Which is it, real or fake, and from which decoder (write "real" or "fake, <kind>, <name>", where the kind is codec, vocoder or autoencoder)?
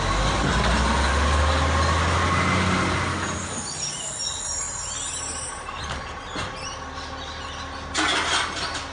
real